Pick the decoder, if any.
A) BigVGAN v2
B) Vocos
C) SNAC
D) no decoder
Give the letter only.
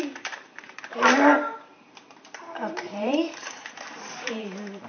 A